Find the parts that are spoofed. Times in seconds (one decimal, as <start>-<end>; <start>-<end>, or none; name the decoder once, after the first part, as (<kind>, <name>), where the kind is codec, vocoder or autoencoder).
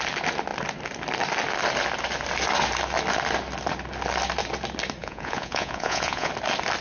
5.0-6.3 (vocoder, Vocos)